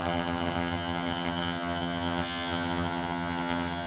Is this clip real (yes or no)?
no